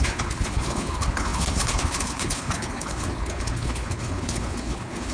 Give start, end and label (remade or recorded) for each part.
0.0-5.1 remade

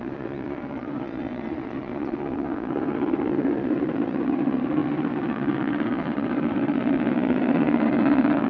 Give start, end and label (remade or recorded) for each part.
0.0-8.5 remade

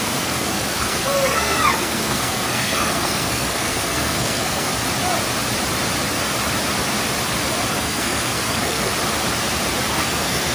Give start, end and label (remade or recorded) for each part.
0.0-4.7 remade; 4.7-7.7 recorded; 7.7-8.9 remade; 8.9-9.9 recorded; 9.9-10.5 remade

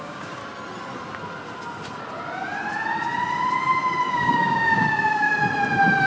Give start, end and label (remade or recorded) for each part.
0.0-0.4 remade; 0.4-4.1 recorded; 4.1-5.3 remade; 5.3-6.1 recorded

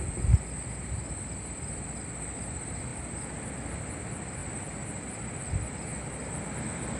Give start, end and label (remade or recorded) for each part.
0.0-7.0 recorded